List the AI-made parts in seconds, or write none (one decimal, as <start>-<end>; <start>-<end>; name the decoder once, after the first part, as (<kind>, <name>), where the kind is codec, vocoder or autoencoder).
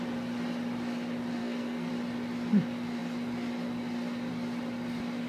1.4-1.9 (codec, SNAC)